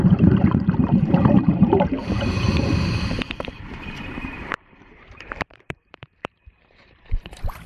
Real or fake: fake